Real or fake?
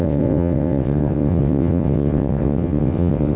fake